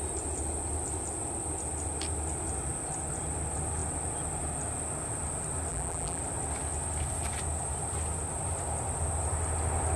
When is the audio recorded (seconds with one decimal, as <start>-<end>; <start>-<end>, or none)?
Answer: 0.0-5.7; 6.2-10.0